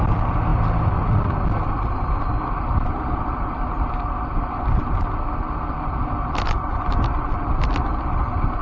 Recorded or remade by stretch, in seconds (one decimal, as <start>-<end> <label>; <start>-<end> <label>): 0.0-8.6 recorded